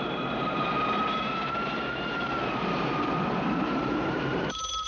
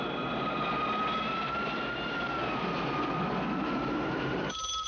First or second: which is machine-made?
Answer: first